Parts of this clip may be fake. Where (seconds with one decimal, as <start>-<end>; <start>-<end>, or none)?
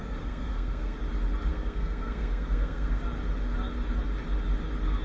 0.0-1.0; 1.5-3.0